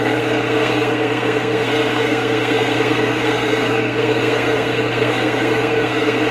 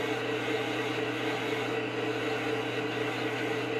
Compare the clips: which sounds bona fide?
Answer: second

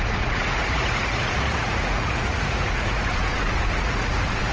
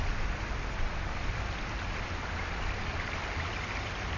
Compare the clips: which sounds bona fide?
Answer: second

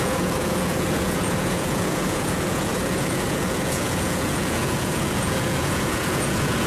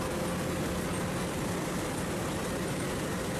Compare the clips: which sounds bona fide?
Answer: second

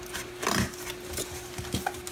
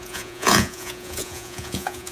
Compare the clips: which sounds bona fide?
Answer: first